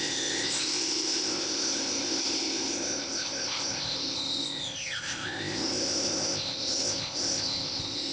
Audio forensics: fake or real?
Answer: fake